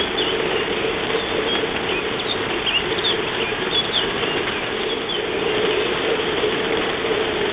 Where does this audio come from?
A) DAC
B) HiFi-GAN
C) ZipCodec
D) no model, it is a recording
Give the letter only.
D